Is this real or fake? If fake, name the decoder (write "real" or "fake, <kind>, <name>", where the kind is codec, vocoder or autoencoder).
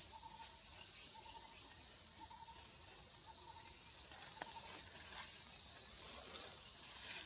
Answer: real